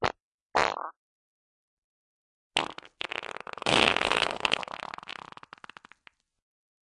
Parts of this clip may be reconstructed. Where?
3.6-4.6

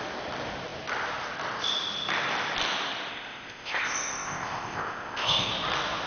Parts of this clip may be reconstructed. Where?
3.1-5.5

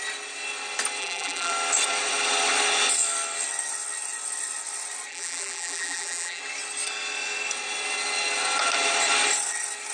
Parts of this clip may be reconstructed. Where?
1.0-1.5; 5.1-6.4

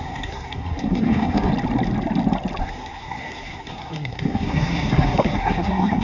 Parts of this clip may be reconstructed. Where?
0.0-1.5; 2.6-6.0

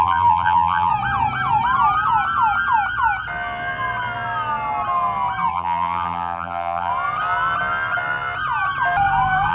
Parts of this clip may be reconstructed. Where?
0.0-0.9; 5.5-6.9